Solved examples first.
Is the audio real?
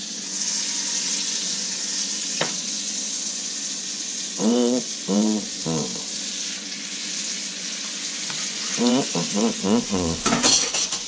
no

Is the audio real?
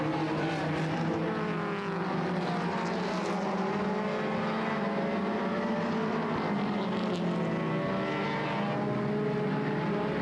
yes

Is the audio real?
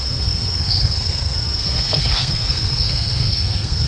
no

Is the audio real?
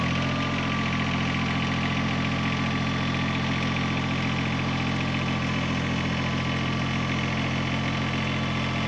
yes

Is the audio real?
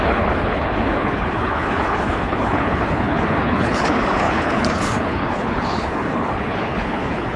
no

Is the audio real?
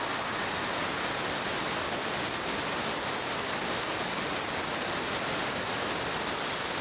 yes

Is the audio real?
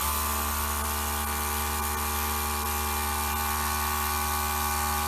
yes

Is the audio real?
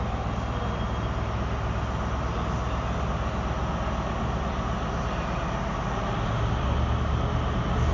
yes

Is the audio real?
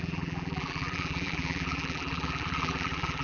no